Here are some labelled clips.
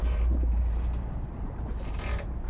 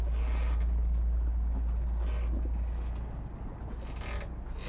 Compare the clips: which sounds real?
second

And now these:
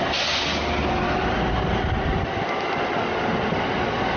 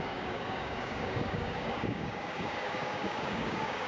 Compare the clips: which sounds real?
first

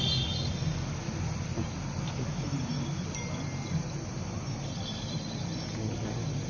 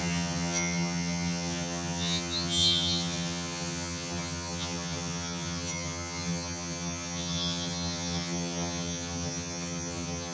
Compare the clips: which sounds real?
first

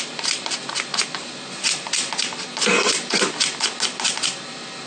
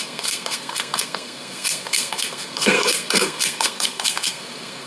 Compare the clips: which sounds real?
first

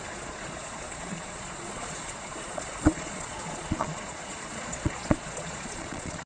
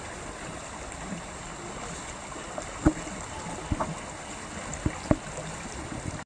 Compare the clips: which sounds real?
second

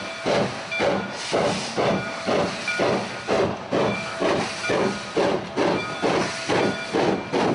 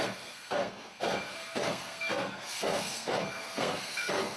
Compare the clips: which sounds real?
first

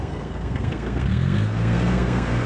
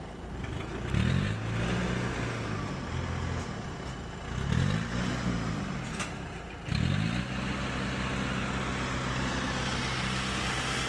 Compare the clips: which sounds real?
second